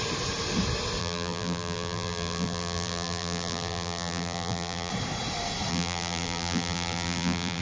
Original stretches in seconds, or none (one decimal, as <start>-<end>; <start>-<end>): 0.0-1.0; 4.9-5.7